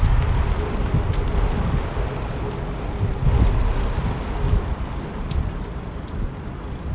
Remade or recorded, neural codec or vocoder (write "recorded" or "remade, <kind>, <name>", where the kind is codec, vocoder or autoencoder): recorded